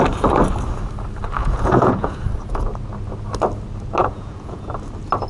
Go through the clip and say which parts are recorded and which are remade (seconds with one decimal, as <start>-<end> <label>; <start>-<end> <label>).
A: 0.0-1.4 recorded; 1.4-2.2 remade; 2.2-4.0 recorded; 4.0-4.7 remade; 4.7-5.3 recorded